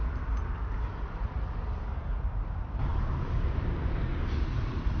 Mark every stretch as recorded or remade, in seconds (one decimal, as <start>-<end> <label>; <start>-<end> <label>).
0.0-2.9 recorded; 2.9-3.7 remade; 3.7-5.0 recorded